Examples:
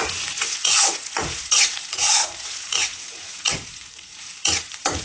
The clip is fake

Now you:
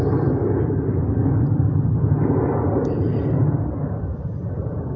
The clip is real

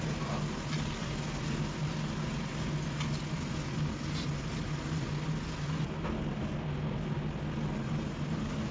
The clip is real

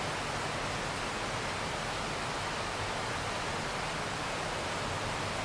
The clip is real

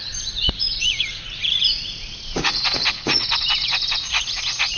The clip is fake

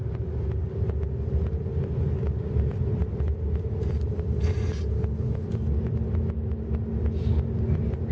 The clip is real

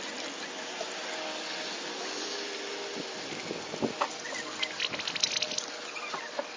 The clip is real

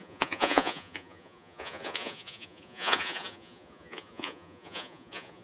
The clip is fake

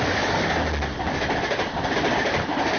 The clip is real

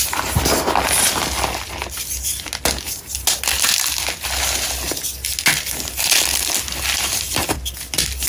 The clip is real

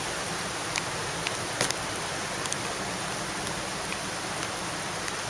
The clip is real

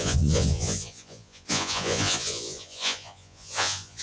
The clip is fake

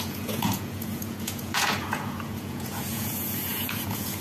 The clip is fake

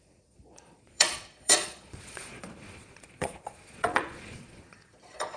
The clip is fake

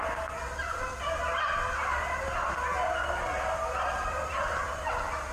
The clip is real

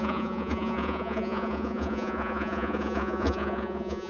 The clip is fake